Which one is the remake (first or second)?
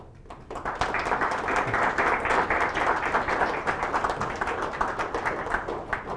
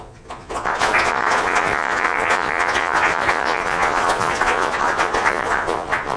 second